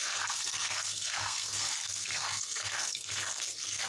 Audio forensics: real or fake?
fake